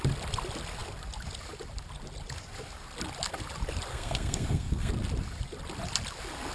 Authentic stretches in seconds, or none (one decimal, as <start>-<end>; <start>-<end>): 0.0-3.9; 4.9-6.5